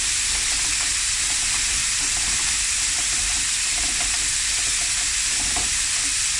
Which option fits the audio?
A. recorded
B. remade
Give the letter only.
A